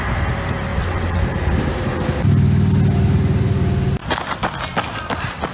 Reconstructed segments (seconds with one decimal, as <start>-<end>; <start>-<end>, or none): 0.7-1.2